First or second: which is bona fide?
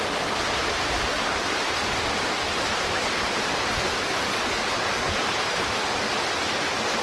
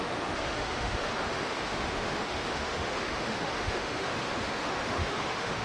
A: first